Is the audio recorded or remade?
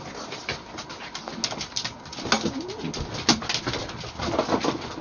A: recorded